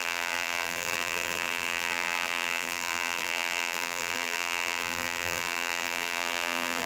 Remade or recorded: remade